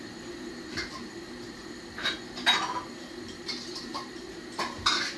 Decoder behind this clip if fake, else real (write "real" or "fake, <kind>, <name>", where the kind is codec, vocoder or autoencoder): fake, vocoder, BigVGAN v2